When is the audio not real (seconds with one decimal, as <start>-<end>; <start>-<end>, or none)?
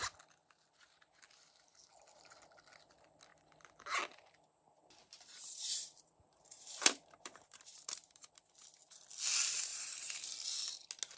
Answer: 5.0-8.4; 9.7-10.3